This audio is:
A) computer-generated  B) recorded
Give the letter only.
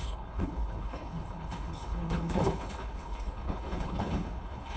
A